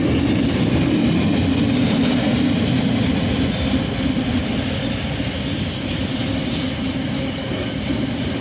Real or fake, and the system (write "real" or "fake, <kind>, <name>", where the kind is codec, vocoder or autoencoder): real